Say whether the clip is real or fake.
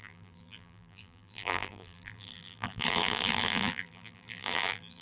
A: fake